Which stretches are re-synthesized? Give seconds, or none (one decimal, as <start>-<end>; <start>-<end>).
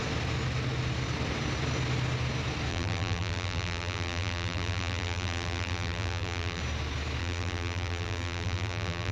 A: 2.7-6.6; 7.2-9.1